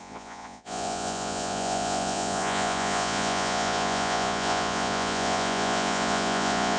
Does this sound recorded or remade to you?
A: remade